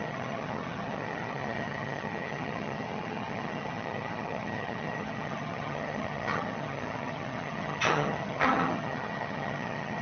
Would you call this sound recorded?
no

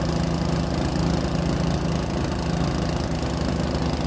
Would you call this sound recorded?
yes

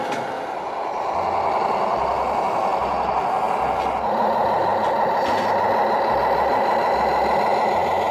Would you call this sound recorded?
yes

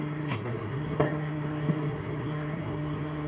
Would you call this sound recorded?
no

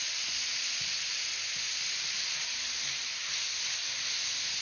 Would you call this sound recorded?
yes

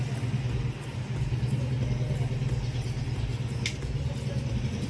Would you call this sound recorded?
yes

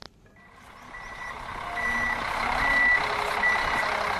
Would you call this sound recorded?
yes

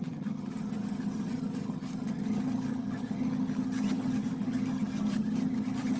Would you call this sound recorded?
no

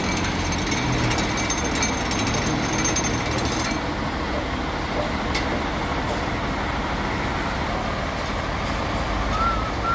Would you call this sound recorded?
yes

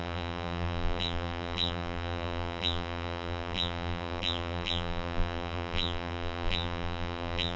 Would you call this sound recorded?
no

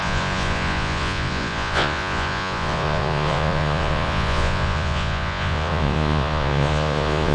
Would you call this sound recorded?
no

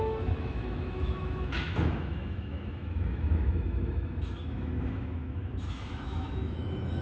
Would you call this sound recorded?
no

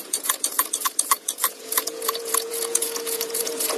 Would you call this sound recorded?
no